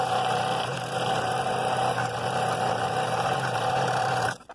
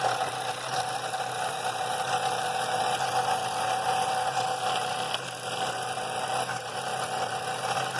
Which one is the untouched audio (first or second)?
second